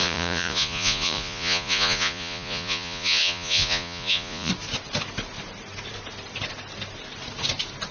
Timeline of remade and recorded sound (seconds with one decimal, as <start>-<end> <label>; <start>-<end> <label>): 0.0-4.5 remade; 4.5-7.9 recorded